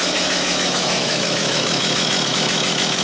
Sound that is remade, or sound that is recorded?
remade